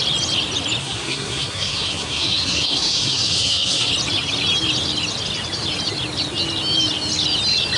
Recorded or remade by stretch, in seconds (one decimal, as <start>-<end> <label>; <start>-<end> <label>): 0.0-0.8 recorded; 0.8-3.9 remade; 3.9-7.8 recorded